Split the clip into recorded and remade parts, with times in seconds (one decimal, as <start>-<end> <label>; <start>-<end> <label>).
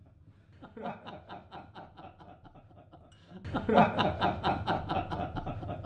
0.0-5.9 recorded